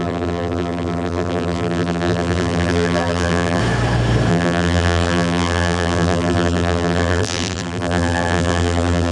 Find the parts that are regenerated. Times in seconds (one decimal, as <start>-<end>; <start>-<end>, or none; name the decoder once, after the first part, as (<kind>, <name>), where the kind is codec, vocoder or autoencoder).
0.0-3.6 (vocoder, BigVGAN v2); 4.3-9.1